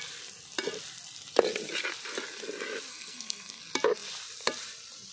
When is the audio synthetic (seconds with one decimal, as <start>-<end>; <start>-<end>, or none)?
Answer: 2.9-3.6